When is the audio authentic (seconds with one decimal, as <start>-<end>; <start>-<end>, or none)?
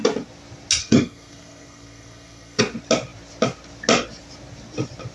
0.0-0.8; 2.6-5.1